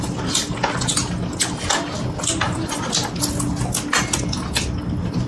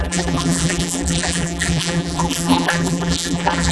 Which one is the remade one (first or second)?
second